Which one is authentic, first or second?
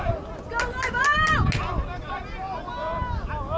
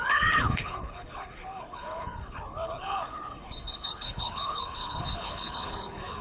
first